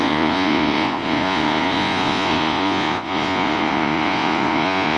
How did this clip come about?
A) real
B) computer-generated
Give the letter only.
B